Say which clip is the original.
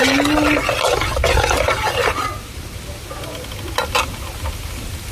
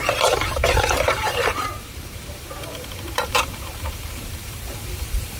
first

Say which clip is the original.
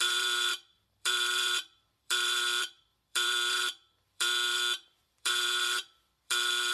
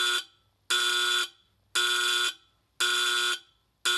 second